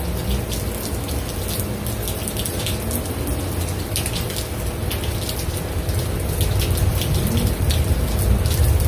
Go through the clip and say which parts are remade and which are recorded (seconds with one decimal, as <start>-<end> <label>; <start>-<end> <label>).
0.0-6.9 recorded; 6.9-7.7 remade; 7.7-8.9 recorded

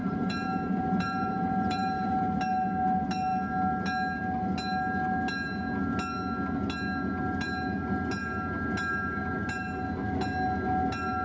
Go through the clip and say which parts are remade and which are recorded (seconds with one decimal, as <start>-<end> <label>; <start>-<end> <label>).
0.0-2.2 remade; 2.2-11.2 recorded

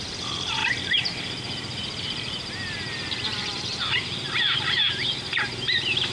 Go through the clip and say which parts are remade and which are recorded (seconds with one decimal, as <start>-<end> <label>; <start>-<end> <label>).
0.0-0.6 remade; 0.6-2.3 recorded; 2.3-6.1 remade

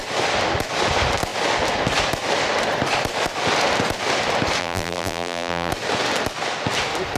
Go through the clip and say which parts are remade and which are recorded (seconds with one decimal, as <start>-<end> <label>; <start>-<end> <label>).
0.0-4.6 recorded; 4.6-5.7 remade; 5.7-7.2 recorded